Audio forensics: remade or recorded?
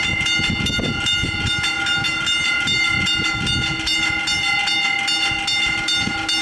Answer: recorded